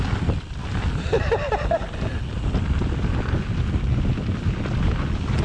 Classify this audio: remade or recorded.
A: recorded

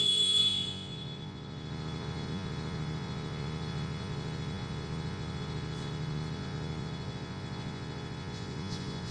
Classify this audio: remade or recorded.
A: remade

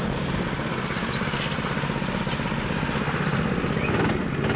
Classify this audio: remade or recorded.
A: recorded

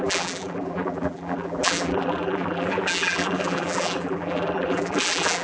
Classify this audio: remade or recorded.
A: remade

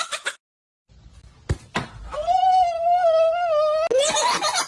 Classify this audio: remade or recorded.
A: recorded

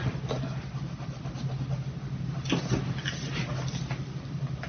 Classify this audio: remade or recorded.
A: recorded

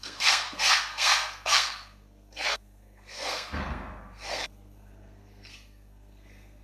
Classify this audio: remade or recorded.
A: remade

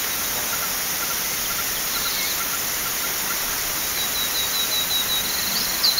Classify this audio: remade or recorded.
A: recorded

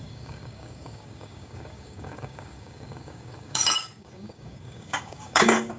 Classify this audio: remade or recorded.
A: remade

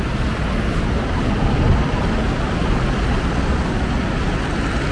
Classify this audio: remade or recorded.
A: recorded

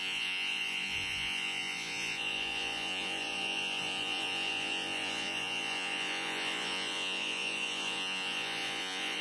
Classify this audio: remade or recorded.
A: remade